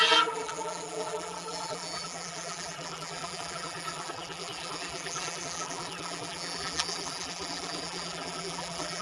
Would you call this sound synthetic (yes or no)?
yes